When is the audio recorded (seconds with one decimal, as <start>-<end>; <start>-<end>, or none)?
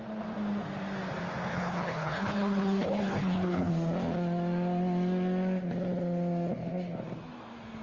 0.0-1.5; 3.7-7.8